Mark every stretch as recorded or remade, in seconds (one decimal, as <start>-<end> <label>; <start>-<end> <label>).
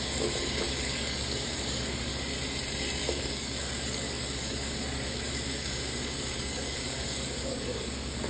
0.0-2.1 remade; 2.1-3.0 recorded; 3.0-8.3 remade